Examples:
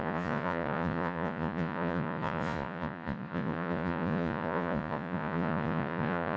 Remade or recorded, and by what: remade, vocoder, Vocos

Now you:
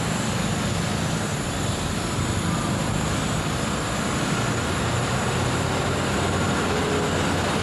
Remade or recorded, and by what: recorded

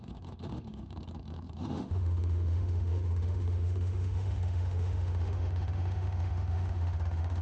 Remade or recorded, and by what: remade, autoencoder, DAC-VAE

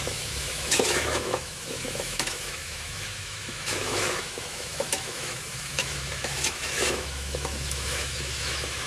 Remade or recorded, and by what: remade, autoencoder, DAC-VAE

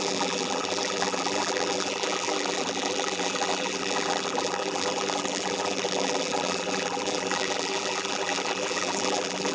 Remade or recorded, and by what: remade, vocoder, BigVGAN v2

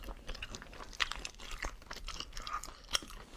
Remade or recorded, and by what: recorded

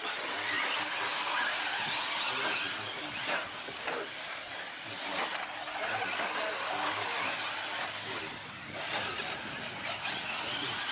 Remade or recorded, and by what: recorded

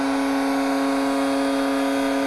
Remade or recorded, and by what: recorded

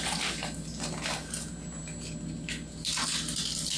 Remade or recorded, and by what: recorded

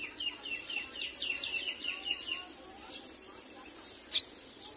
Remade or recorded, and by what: recorded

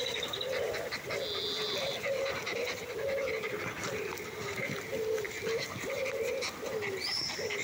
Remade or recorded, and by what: recorded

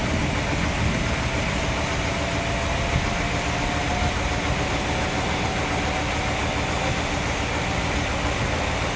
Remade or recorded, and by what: recorded